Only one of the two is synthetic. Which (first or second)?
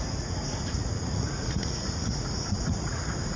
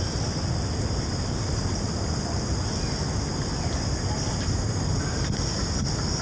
first